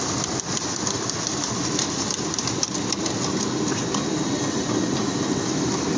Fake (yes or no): no